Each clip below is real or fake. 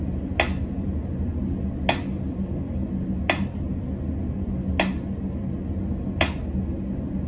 real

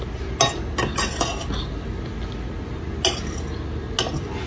real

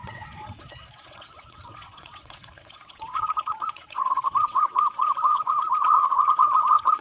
fake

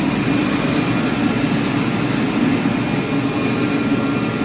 real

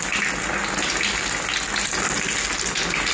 real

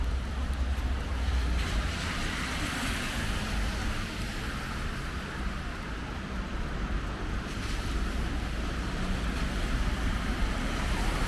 real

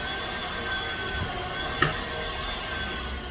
real